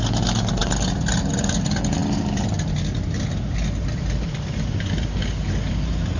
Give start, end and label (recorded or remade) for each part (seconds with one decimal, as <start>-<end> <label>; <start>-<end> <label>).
0.0-6.2 recorded

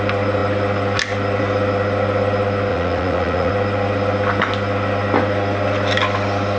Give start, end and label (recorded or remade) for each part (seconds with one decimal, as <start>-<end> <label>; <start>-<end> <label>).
0.0-2.7 recorded; 2.7-3.5 remade; 3.5-6.6 recorded

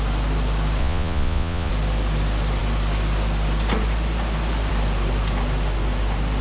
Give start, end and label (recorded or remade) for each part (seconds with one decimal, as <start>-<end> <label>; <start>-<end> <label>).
0.0-0.8 recorded; 0.8-1.7 remade; 1.7-6.4 recorded

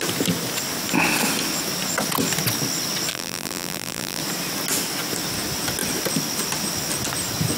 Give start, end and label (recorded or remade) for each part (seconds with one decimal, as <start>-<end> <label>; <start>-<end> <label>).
0.0-3.1 recorded; 3.1-4.2 remade; 4.2-7.6 recorded

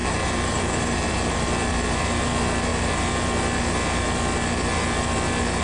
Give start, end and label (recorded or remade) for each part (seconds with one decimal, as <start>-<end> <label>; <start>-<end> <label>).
0.0-1.3 remade; 1.3-5.6 recorded

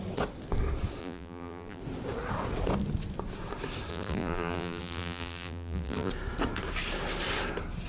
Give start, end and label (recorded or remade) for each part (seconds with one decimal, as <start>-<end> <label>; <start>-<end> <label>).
0.0-1.0 recorded; 1.0-1.8 remade; 1.8-3.9 recorded; 3.9-6.1 remade; 6.1-7.9 recorded